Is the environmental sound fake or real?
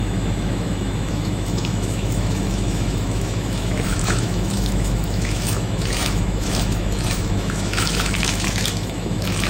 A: fake